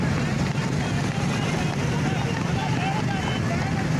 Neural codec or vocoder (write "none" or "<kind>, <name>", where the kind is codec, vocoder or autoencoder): none